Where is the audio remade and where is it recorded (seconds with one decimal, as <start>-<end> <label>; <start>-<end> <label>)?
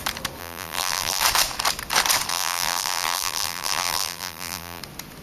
0.0-0.4 recorded; 0.4-1.2 remade; 1.2-2.3 recorded; 2.3-4.8 remade; 4.8-5.2 recorded